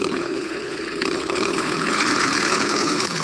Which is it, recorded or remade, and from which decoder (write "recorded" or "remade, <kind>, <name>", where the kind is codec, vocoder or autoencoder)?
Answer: remade, codec, HILCodec